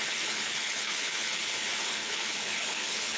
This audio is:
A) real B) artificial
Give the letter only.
B